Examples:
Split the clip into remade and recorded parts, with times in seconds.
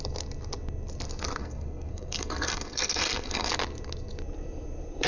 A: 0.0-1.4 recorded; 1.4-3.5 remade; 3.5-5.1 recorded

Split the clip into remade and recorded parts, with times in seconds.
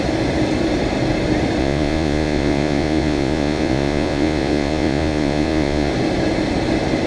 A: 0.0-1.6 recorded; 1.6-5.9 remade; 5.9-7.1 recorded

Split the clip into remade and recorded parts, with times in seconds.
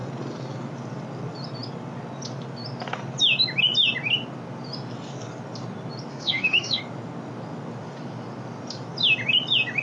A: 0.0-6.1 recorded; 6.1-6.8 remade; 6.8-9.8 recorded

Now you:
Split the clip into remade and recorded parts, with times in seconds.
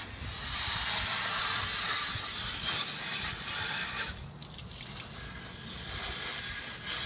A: 0.0-7.1 recorded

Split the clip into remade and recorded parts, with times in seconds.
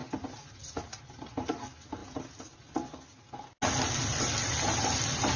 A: 0.0-5.4 recorded